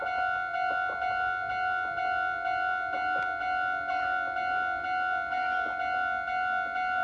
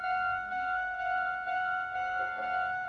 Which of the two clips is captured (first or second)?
first